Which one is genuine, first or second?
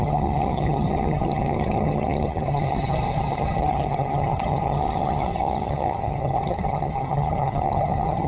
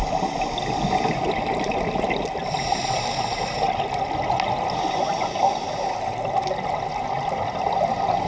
second